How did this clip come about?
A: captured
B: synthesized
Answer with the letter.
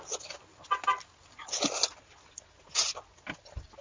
A